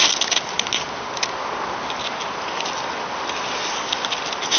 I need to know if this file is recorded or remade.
recorded